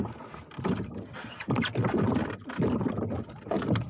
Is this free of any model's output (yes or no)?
yes